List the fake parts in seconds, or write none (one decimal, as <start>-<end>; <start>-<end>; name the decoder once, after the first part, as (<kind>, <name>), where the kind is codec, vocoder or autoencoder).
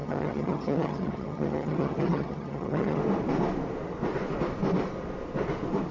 0.0-3.0 (vocoder, HiFi-GAN)